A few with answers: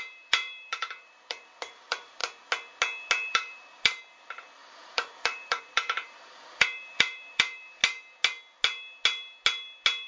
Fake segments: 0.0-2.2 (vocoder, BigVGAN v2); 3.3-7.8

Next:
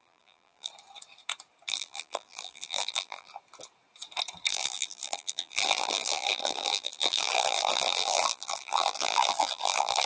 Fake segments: 0.0-0.7 (vocoder, BigVGAN v2); 1.7-3.3; 4.5-10.1

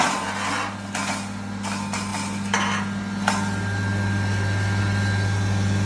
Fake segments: none